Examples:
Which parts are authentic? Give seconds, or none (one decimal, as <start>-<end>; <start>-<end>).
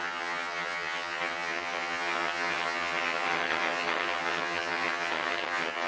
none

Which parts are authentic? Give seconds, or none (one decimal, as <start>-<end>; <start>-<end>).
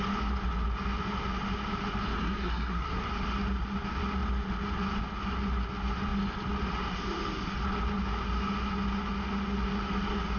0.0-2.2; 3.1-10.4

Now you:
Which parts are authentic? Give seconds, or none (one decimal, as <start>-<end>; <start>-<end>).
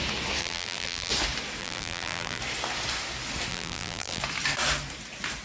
0.0-0.4; 1.1-1.6; 2.4-3.5; 4.2-5.4